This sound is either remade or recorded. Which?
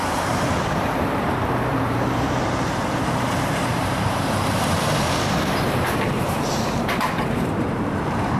remade